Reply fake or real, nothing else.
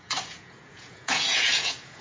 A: fake